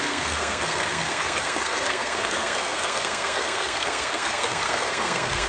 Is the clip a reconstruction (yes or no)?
yes